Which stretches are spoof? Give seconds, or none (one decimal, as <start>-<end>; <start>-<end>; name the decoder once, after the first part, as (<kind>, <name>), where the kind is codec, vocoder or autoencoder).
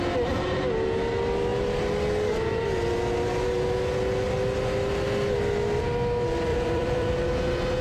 6.5-7.1 (vocoder, BigVGAN v2)